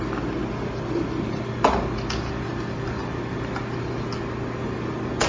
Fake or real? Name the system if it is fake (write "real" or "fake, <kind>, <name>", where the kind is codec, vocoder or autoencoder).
real